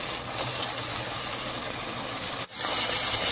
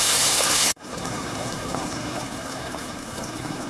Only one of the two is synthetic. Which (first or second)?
second